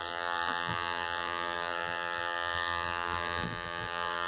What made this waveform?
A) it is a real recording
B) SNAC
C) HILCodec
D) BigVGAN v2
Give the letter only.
D